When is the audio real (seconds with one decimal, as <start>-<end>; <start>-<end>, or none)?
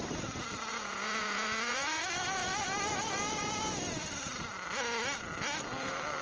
0.0-0.7; 2.0-2.4; 4.0-6.2